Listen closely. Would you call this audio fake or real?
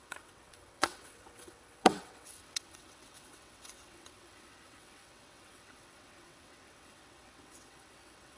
fake